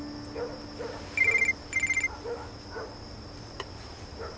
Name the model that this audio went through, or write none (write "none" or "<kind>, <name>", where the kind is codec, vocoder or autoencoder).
none